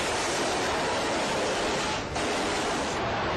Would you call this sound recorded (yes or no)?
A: yes